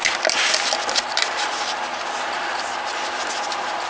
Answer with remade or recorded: recorded